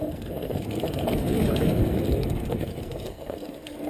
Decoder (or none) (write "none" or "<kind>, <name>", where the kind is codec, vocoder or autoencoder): codec, SNAC